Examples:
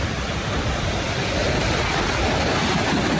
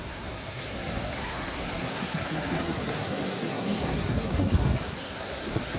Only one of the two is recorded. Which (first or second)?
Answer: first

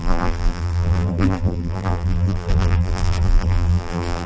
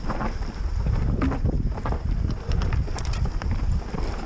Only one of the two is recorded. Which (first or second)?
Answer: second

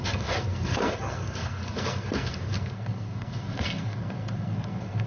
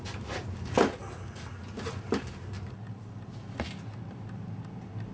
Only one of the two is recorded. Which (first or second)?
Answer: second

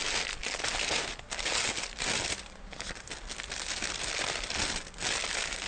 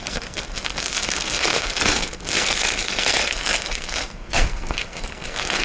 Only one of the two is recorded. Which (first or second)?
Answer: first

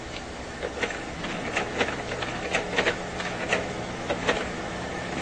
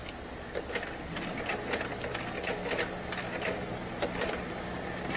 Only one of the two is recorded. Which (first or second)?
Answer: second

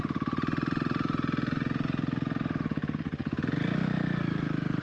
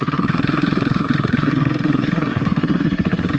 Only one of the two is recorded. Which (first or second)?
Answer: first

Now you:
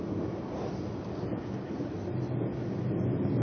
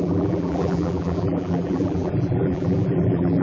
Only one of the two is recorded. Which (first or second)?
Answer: first